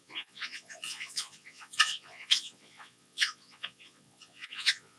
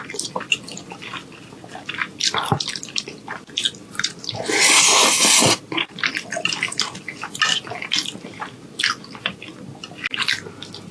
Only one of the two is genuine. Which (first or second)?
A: second